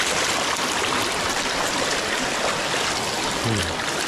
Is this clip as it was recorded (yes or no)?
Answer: yes